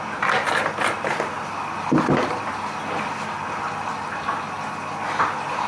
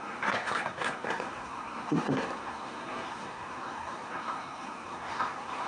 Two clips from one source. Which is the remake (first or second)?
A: second